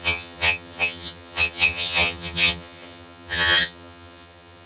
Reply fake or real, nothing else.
fake